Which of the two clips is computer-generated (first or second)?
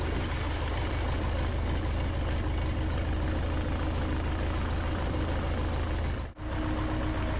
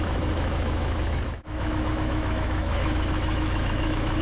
second